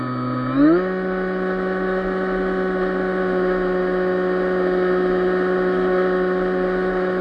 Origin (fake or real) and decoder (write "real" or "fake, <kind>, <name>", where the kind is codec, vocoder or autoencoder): real